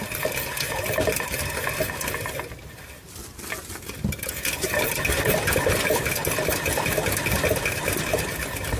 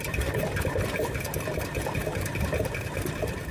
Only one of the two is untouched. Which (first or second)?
first